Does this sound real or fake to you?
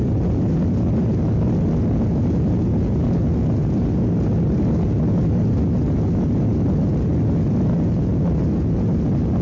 real